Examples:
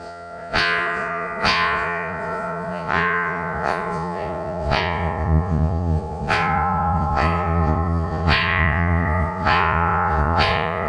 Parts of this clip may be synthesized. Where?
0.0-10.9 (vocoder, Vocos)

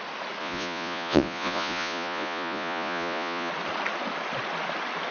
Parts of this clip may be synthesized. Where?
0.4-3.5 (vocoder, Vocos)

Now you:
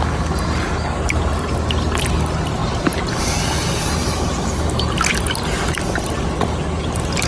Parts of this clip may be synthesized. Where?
none

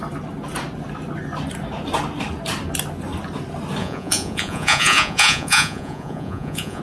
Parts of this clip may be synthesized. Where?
3.8-6.8 (vocoder, Vocos)

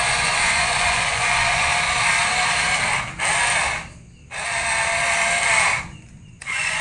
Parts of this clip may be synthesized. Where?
0.0-1.7 (vocoder, Vocos); 5.8-6.8

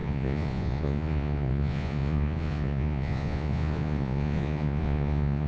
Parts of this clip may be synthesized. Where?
0.0-5.5 (vocoder, Vocos)

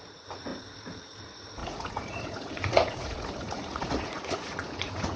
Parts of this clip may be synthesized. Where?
0.0-0.5 (vocoder, Vocos); 1.2-5.2

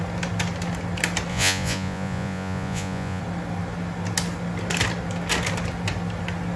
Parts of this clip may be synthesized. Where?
1.3-3.2 (vocoder, Vocos)